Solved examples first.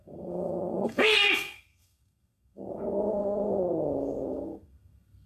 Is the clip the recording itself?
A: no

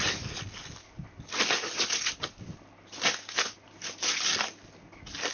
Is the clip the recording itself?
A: yes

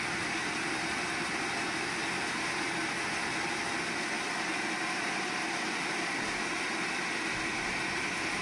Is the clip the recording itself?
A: yes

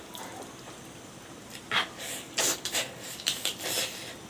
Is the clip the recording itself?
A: no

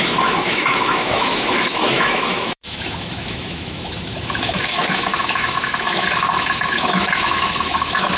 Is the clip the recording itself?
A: no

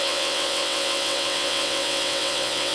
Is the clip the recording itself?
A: no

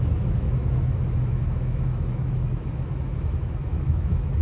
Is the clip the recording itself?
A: no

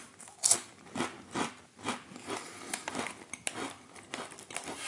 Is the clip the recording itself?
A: yes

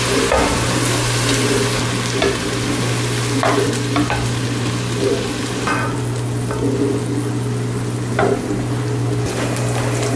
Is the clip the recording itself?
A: yes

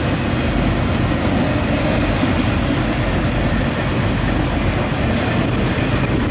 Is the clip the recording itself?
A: yes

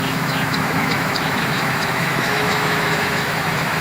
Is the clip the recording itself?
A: no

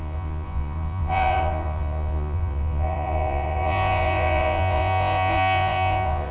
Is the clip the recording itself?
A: no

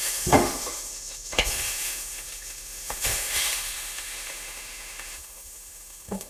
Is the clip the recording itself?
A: no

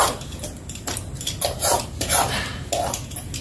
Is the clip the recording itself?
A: yes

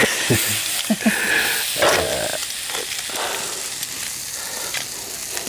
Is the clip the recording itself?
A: yes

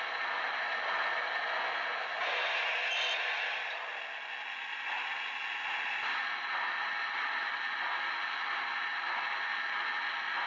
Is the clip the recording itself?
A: yes